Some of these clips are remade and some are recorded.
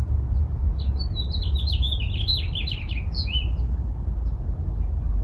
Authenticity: recorded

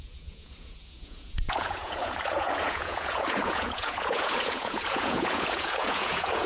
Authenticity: remade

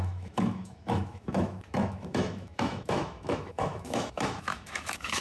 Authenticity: remade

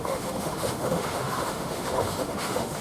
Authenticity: remade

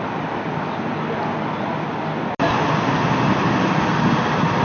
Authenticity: recorded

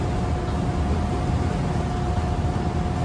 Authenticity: recorded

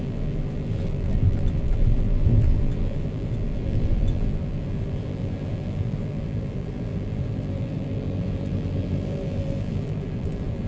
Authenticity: remade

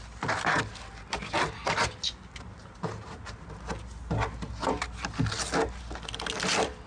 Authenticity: recorded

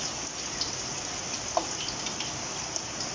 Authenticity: recorded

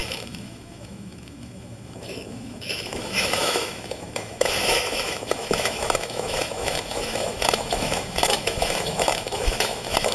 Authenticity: remade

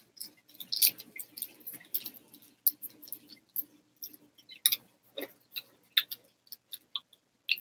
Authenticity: recorded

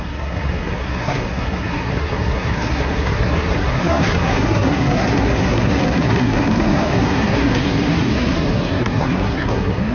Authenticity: remade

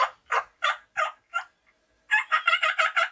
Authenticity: recorded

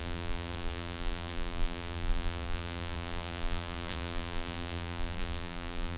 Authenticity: remade